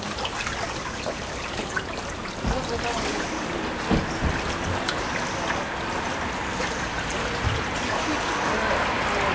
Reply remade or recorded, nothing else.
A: recorded